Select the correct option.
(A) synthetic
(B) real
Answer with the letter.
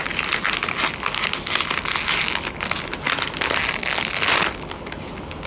B